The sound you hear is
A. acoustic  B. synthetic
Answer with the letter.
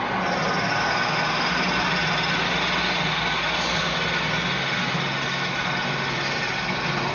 A